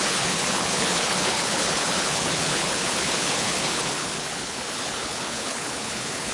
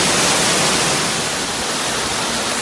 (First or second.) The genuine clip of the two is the second